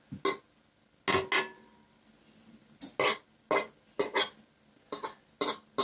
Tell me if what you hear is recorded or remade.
recorded